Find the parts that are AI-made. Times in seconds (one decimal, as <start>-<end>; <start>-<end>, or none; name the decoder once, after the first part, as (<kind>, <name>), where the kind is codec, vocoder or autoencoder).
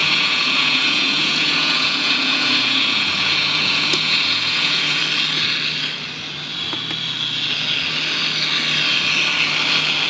0.0-5.0 (vocoder, Vocos)